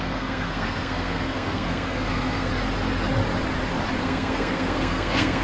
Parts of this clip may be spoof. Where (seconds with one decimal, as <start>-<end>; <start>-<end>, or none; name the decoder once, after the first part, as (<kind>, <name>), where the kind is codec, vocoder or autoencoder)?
0.0-2.5 (codec, SNAC); 4.0-5.4